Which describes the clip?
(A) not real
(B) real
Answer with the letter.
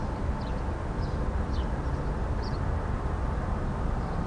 B